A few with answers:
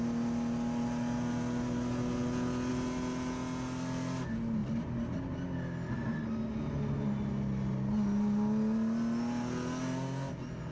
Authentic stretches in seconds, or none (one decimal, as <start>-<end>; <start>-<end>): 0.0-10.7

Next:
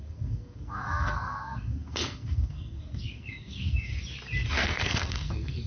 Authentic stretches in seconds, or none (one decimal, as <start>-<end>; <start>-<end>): 3.9-4.5

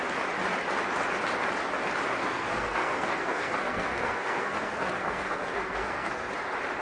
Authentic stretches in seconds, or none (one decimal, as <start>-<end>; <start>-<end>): 0.0-2.2; 6.3-6.8

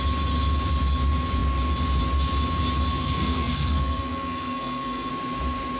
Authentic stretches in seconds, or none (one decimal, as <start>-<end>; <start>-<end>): 0.0-2.9; 5.1-5.8